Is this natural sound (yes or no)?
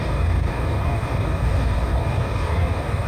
no